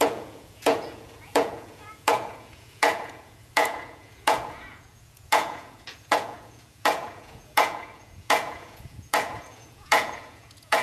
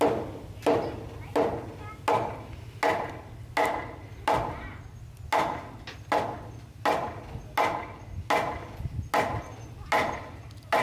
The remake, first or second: first